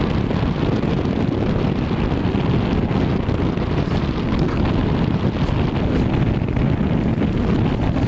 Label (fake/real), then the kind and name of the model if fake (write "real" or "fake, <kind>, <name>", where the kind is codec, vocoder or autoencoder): real